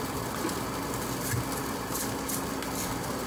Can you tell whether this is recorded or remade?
recorded